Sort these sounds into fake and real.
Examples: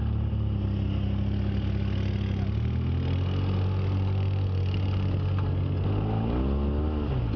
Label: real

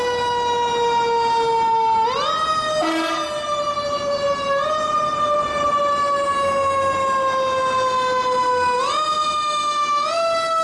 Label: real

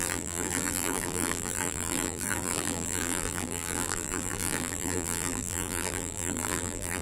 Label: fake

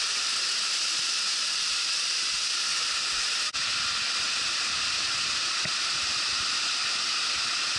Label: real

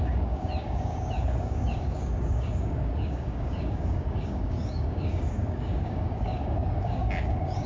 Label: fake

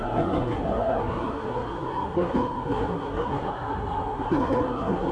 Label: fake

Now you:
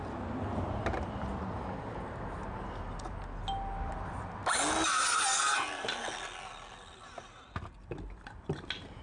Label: real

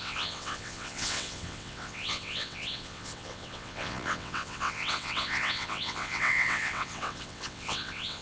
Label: fake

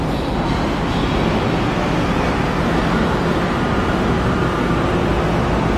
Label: real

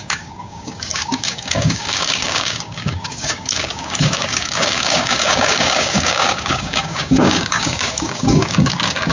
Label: fake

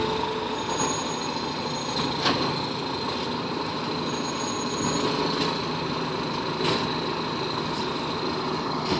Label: real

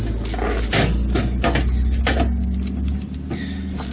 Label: real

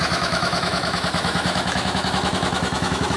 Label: fake